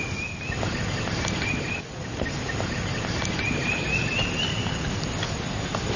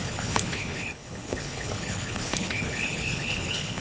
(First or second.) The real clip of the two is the first